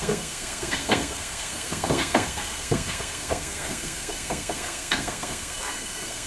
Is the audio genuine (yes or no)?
no